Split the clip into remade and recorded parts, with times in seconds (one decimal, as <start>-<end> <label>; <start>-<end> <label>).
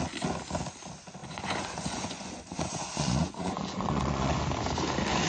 0.0-1.2 recorded; 1.2-4.4 remade; 4.4-5.3 recorded